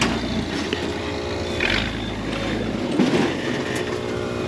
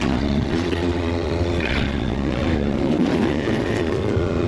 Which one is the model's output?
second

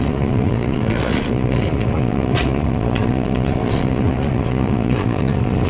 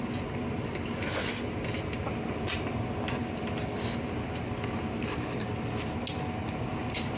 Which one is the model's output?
first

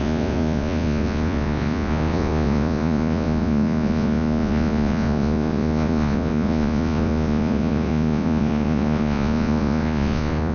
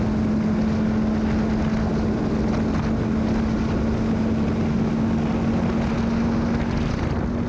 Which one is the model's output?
first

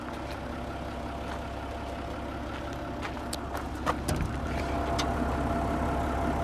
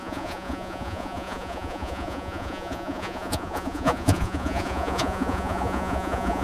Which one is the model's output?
second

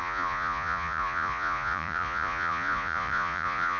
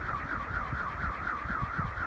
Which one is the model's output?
first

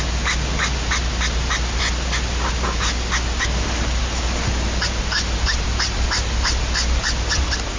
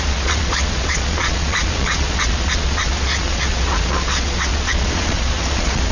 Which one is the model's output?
second